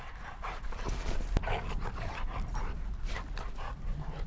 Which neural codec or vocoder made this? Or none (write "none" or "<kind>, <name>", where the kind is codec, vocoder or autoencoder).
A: none